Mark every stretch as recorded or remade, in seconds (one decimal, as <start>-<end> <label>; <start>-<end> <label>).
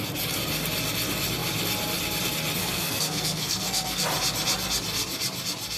0.0-2.6 recorded; 2.6-4.0 remade; 4.0-5.8 recorded